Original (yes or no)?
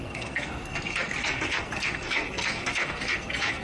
no